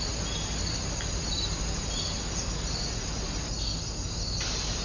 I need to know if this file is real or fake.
real